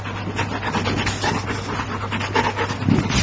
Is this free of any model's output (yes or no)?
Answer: yes